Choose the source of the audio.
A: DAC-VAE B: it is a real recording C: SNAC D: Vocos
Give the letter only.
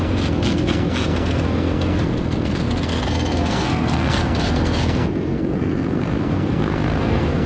C